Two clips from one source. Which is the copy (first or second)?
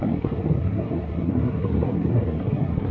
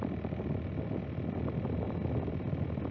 first